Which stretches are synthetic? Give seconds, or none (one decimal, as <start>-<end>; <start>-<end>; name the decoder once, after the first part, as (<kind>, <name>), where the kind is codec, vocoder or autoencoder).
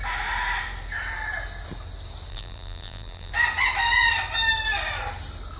2.3-3.3 (vocoder, BigVGAN v2)